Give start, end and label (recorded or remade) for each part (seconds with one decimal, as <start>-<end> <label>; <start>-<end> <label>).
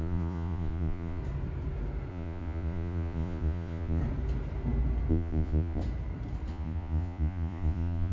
0.0-1.2 remade; 1.2-2.1 recorded; 2.1-4.0 remade; 4.0-5.1 recorded; 5.1-5.8 remade; 5.8-6.5 recorded; 6.5-8.1 remade